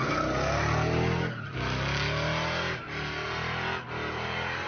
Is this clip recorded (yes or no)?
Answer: yes